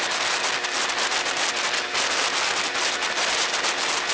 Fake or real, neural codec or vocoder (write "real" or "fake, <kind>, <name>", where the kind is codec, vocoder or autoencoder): real